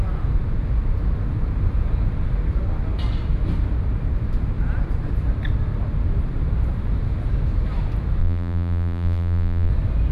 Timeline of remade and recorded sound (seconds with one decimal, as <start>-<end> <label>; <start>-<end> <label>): 0.0-8.2 recorded; 8.2-9.7 remade; 9.7-10.1 recorded